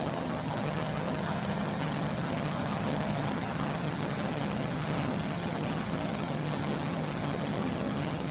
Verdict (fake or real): fake